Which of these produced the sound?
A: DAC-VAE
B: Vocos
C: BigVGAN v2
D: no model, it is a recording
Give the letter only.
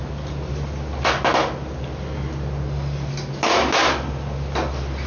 D